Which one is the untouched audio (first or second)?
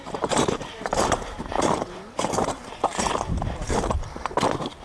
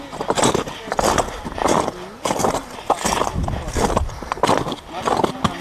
second